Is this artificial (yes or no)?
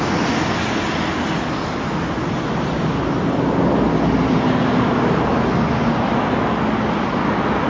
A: no